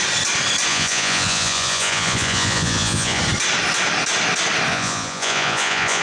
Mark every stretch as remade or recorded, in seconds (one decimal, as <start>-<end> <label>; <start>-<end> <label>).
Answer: 0.0-0.7 recorded; 0.7-3.2 remade; 3.2-4.7 recorded; 4.7-6.0 remade